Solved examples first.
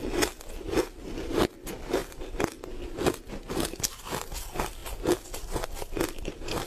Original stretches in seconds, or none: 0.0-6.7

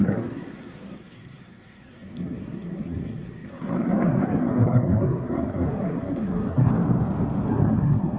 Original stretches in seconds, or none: 6.7-7.5

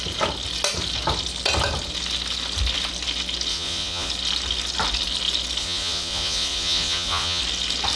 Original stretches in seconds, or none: 0.0-3.5; 4.1-5.6; 7.4-8.0

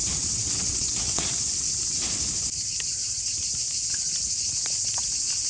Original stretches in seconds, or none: 1.7-5.5